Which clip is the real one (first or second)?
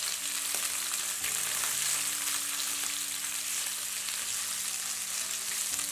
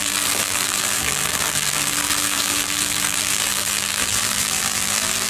first